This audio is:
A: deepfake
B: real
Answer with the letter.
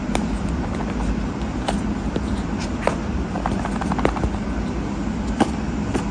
B